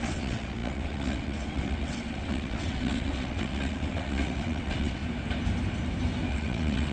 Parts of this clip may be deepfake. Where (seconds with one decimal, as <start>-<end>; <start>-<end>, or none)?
0.0-5.0; 6.3-6.9

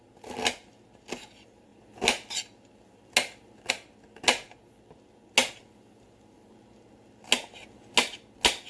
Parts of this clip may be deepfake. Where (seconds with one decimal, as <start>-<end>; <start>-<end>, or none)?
none